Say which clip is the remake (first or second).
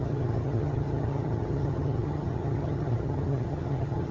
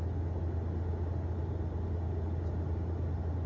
first